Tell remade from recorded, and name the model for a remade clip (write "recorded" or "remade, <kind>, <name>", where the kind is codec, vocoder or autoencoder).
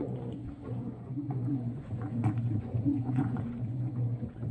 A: remade, vocoder, Vocos